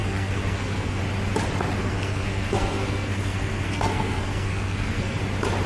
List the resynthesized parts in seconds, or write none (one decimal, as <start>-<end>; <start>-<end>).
0.0-1.0; 1.8-5.2